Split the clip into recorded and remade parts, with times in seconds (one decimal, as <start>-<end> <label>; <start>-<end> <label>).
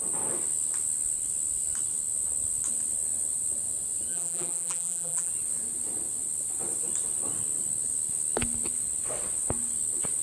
0.0-4.1 recorded; 4.1-5.3 remade; 5.3-10.2 recorded